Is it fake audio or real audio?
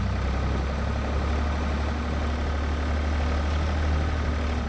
real